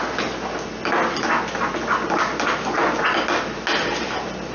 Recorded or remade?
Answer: recorded